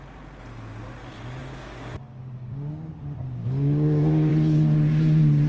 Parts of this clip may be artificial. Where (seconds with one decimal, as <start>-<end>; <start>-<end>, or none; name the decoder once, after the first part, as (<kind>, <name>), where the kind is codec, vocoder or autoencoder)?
1.4-2.9 (codec, DAC); 3.4-4.3